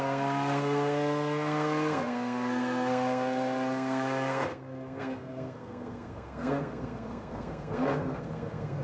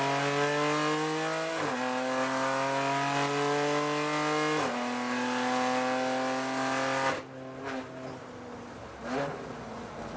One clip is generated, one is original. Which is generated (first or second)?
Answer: first